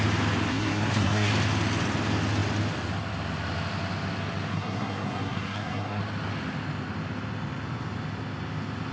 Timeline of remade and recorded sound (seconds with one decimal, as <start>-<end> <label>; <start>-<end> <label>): 0.0-0.5 recorded; 0.5-1.3 remade; 1.3-4.5 recorded; 4.5-6.0 remade; 6.0-8.9 recorded